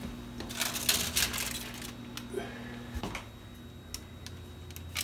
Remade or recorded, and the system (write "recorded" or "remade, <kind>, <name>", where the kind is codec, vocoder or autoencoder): recorded